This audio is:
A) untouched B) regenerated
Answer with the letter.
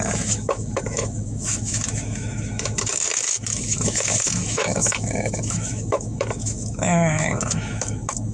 B